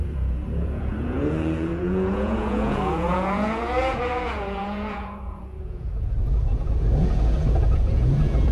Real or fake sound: fake